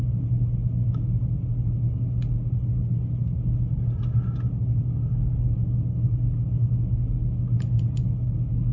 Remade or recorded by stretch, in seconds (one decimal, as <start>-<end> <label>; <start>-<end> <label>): 0.0-8.7 recorded